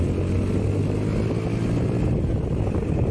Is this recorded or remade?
recorded